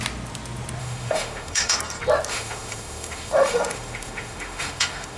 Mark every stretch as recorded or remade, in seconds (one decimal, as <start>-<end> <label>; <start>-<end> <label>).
0.0-0.8 recorded; 0.8-1.8 remade; 1.8-2.3 recorded; 2.3-5.2 remade